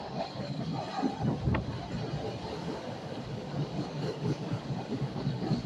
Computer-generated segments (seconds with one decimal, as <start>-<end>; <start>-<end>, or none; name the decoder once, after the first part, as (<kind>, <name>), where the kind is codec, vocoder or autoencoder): 0.0-0.7 (codec, DAC); 2.5-5.7